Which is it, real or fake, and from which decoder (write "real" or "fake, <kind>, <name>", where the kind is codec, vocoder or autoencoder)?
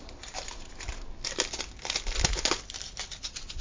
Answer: real